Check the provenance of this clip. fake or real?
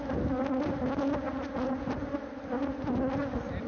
real